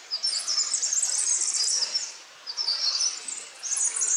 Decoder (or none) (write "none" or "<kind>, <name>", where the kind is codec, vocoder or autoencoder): vocoder, BigVGAN v2